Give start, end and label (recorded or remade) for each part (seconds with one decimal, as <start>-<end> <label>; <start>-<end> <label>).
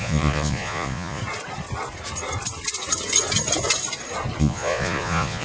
0.0-1.2 remade; 1.2-4.4 recorded; 4.4-5.4 remade